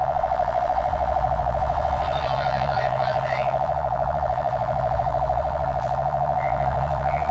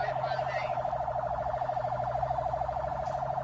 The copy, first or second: first